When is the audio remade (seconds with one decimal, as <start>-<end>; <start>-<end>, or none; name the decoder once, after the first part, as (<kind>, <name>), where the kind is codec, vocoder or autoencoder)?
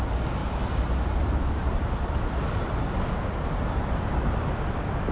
none